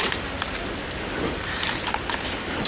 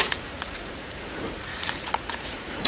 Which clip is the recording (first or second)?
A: first